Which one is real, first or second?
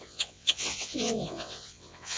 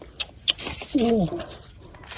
second